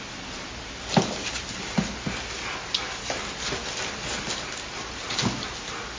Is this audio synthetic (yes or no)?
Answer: no